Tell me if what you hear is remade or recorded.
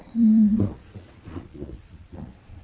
remade